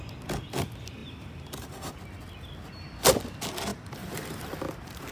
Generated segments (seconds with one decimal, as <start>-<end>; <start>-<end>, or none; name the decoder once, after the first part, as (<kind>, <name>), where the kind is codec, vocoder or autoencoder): 1.0-2.0 (vocoder, BigVGAN v2); 3.7-4.4